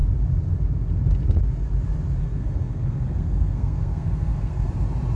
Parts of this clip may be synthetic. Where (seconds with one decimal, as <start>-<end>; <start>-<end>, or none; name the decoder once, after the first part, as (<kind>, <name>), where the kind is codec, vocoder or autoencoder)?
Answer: 2.2-4.7 (codec, SNAC)